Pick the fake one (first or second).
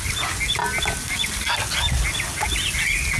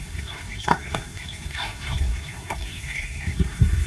second